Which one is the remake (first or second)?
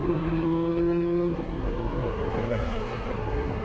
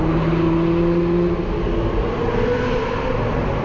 first